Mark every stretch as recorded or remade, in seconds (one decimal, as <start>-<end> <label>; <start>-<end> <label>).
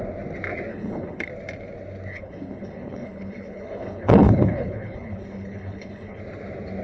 0.0-0.7 recorded; 0.7-1.3 remade; 1.3-2.1 recorded; 2.1-6.2 remade; 6.2-6.8 recorded